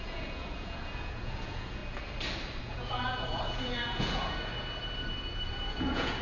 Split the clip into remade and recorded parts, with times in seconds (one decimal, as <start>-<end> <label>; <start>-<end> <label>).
0.0-1.8 remade; 1.8-2.6 recorded; 2.6-4.5 remade; 4.5-5.5 recorded; 5.5-6.2 remade